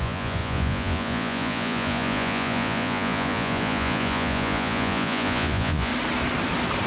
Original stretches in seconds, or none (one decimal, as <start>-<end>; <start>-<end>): 5.9-6.9